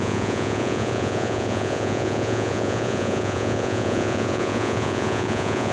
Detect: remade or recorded remade